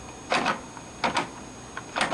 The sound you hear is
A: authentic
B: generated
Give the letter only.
A